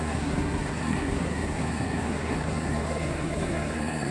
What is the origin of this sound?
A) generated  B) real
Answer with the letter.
A